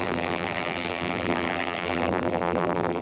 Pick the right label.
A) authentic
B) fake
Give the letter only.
B